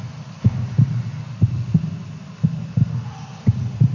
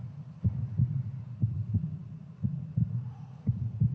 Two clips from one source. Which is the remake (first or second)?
second